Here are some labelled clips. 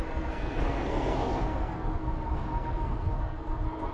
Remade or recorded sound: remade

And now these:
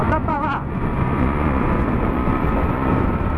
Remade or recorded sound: remade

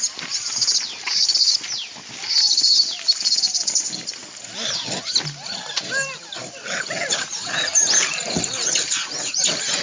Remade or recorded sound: recorded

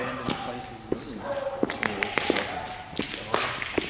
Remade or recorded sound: recorded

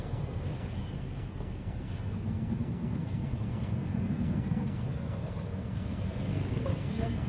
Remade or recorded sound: remade